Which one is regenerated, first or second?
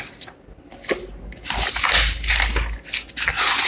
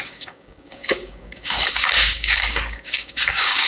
second